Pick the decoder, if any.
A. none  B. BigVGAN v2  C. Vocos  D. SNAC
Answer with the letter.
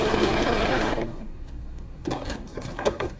D